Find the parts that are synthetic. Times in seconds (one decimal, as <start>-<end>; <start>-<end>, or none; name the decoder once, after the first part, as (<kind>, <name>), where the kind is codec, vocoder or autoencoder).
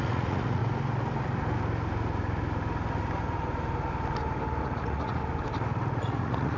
0.0-0.6 (vocoder, Vocos); 4.6-5.2; 6.0-6.6